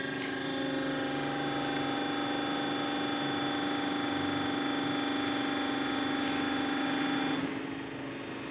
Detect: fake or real real